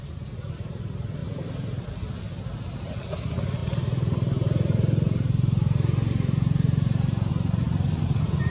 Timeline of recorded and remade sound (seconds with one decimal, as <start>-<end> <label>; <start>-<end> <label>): 0.0-1.2 recorded; 1.2-1.9 remade; 1.9-3.6 recorded; 3.6-7.3 remade; 7.3-8.5 recorded